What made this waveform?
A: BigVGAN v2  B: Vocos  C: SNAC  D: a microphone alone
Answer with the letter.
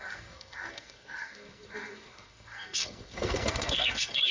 C